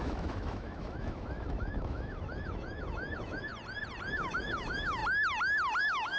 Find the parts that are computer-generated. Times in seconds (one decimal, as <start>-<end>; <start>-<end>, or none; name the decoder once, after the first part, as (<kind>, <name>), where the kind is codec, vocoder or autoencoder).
0.0-3.5 (autoencoder, DAC-VAE); 4.1-5.0; 5.8-6.2